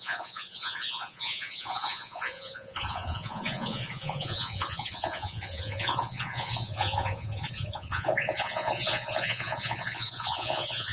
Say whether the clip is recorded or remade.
remade